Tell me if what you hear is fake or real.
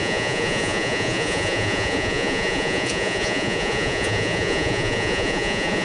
fake